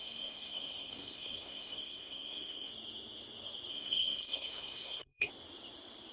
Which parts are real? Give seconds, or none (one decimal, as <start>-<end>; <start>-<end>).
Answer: 2.7-3.7; 5.3-6.1